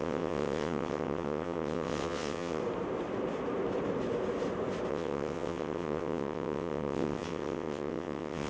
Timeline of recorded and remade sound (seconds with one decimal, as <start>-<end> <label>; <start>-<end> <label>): 0.0-2.6 remade; 2.6-4.9 recorded; 4.9-8.5 remade